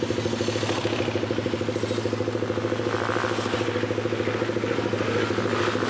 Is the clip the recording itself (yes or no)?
yes